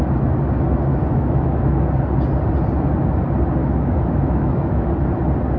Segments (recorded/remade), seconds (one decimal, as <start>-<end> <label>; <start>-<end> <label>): 0.0-0.9 recorded; 0.9-1.8 remade; 1.8-3.6 recorded; 3.6-4.9 remade; 4.9-5.6 recorded